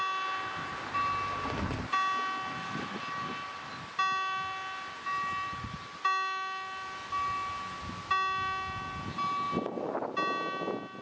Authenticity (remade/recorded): recorded